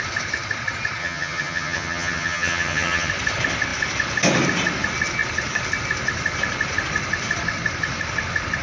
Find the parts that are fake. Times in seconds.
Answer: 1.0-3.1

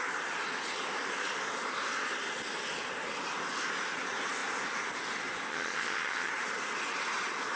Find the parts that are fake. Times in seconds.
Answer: 5.5-6.3

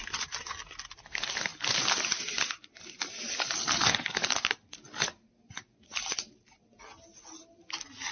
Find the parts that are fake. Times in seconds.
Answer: none

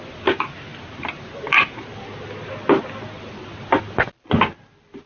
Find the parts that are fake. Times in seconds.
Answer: none